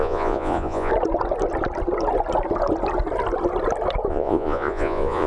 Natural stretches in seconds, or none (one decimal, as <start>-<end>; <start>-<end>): 0.9-4.1